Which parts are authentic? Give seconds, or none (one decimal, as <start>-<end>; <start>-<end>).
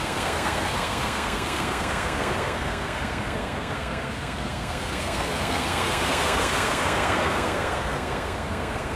none